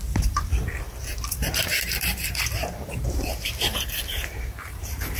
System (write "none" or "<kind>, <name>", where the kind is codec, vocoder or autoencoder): vocoder, BigVGAN v2